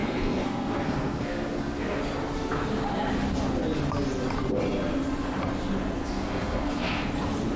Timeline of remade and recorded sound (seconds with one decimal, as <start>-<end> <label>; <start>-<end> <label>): 0.0-2.0 remade; 2.0-6.0 recorded; 6.0-7.1 remade; 7.1-7.6 recorded